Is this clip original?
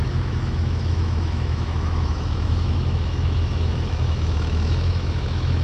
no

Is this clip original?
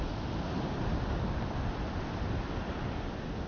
yes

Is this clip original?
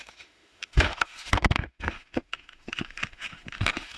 no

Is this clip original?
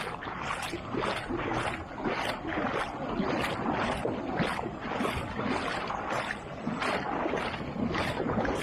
yes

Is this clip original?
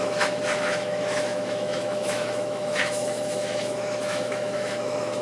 no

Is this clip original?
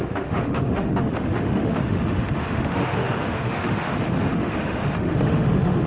no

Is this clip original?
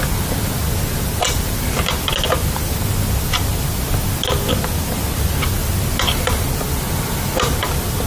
yes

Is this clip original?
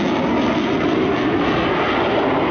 yes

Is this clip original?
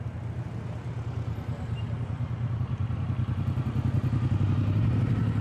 yes